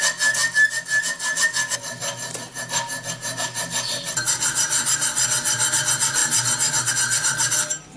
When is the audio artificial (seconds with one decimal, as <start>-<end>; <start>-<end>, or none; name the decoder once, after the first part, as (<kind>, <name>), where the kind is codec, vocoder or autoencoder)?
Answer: none